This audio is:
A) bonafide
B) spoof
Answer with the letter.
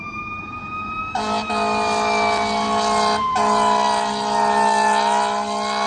A